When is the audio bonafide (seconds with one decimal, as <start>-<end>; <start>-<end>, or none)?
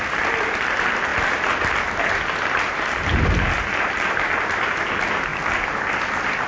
0.0-6.5